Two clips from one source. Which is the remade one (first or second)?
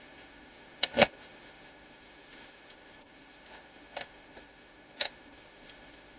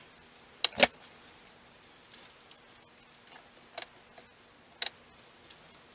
first